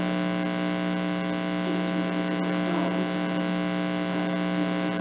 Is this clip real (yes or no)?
yes